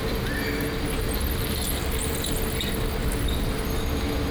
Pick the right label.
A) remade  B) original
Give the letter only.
B